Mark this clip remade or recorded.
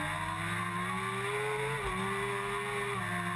recorded